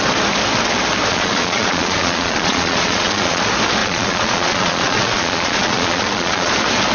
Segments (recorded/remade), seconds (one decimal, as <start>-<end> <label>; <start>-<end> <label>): 0.0-1.1 recorded; 1.1-3.4 remade; 3.4-3.8 recorded; 3.8-6.5 remade; 6.5-6.9 recorded